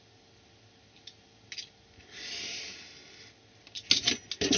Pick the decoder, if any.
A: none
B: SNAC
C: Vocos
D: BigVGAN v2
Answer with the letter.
A